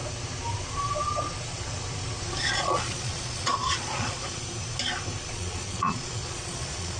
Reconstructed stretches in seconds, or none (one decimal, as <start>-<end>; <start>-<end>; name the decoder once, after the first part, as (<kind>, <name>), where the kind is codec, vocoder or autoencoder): 2.4-4.4 (vocoder, Vocos); 5.3-7.0